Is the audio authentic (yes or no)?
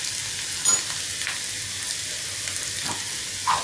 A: yes